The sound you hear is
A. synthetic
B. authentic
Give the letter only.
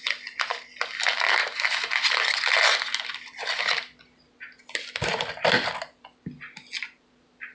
B